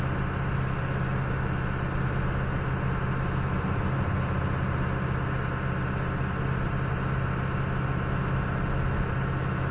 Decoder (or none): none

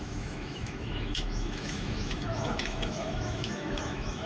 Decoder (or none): autoencoder, DAC-VAE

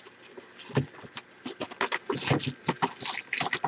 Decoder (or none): none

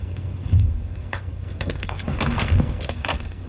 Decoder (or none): codec, SNAC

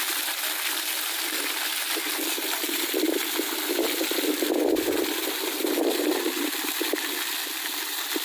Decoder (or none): none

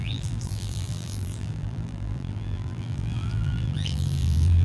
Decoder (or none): vocoder, BigVGAN v2